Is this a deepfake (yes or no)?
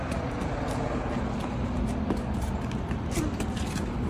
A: no